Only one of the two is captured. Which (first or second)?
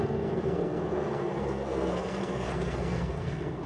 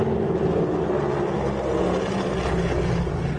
second